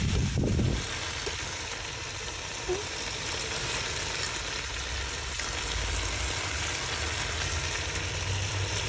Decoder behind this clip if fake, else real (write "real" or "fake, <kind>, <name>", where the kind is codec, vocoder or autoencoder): real